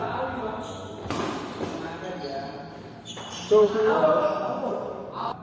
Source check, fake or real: real